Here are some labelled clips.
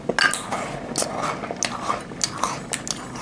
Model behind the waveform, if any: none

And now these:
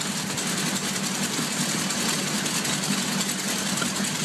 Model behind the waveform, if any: none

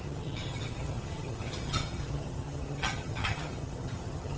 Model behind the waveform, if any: vocoder, HiFi-GAN